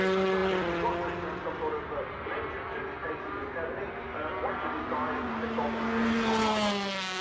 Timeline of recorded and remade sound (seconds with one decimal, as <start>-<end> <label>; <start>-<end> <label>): 0.0-7.2 recorded